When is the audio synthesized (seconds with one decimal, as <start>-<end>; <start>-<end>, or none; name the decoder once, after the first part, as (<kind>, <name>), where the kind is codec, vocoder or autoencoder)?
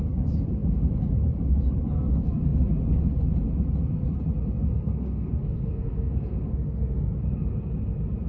4.7-6.9 (codec, SNAC)